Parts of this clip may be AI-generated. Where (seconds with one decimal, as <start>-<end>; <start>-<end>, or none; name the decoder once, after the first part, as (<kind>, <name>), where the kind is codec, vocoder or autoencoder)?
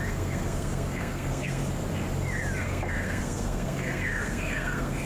0.0-1.6 (codec, SNAC); 2.6-5.1